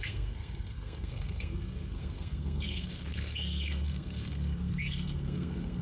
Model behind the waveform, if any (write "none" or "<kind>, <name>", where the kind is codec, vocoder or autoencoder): codec, SNAC